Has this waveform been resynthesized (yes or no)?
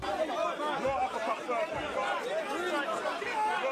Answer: no